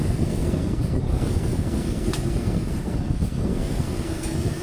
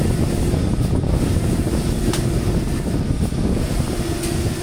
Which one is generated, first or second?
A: first